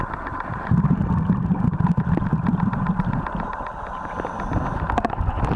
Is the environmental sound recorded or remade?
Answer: recorded